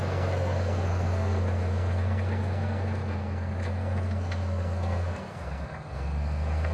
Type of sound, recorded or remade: remade